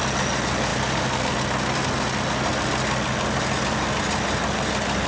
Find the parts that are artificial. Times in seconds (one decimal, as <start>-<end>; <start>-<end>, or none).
none